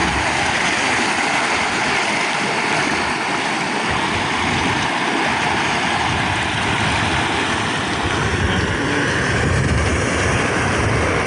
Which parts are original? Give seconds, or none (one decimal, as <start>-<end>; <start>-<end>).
0.0-11.3